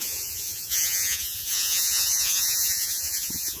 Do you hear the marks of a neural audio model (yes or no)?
yes